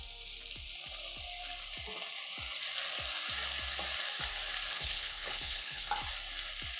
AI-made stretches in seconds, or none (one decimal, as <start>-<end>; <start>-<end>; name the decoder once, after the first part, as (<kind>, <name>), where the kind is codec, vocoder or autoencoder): 4.7-5.9 (codec, HILCodec)